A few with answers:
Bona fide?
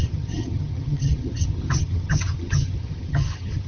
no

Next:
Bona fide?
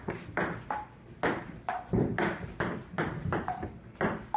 yes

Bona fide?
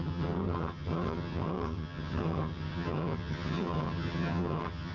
no